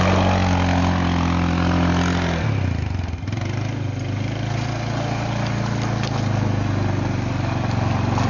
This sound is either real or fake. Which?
real